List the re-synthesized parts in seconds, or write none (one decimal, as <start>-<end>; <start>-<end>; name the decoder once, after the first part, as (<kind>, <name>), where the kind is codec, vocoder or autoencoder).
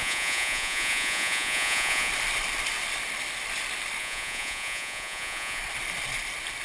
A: 0.0-2.1 (vocoder, Vocos); 4.0-5.6